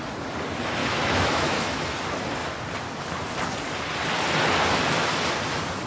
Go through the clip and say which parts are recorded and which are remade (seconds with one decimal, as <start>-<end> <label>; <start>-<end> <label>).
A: 0.0-0.8 recorded; 0.8-1.8 remade; 1.8-5.9 recorded